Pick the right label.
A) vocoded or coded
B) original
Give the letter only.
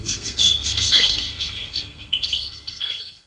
A